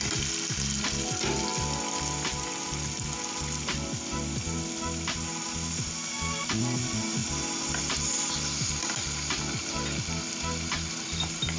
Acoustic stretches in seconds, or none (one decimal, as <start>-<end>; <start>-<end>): 0.0-11.6